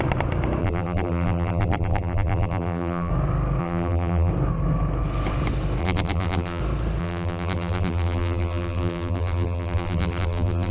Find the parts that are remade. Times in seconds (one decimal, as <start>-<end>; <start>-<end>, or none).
0.6-3.1; 3.6-4.3; 5.8-6.6; 7.0-10.7